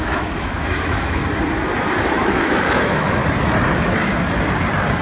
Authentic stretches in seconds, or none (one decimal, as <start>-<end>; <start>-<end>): 1.2-2.0; 3.2-5.0